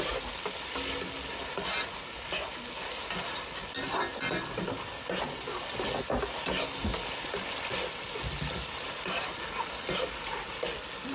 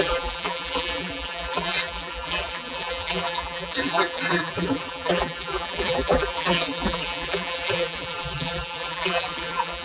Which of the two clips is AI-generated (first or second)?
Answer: second